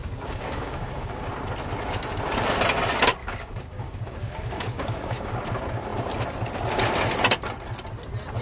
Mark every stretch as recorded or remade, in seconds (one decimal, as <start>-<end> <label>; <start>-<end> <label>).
0.0-1.3 remade; 1.3-3.2 recorded; 3.2-5.4 remade; 5.4-8.4 recorded